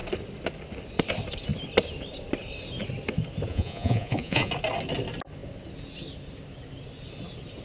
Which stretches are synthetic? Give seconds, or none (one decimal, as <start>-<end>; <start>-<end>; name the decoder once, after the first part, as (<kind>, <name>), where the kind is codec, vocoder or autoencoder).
3.5-4.5 (vocoder, Vocos)